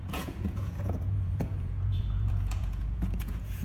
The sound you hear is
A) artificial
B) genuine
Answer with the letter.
A